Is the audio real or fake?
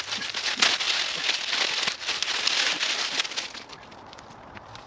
real